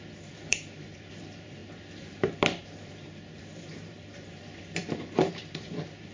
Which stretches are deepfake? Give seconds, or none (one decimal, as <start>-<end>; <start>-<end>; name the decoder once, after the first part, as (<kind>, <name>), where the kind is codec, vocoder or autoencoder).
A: 0.0-6.1 (vocoder, BigVGAN v2)